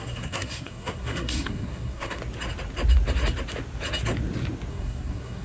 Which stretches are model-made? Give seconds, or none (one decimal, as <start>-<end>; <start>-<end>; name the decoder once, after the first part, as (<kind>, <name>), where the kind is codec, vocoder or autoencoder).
0.0-2.2 (codec, SNAC); 4.7-5.4